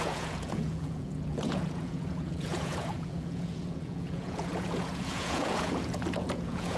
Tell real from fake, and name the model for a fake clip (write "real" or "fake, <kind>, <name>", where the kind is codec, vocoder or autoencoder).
fake, vocoder, Vocos